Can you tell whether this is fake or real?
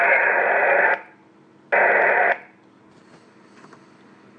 real